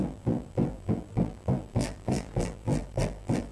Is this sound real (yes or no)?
no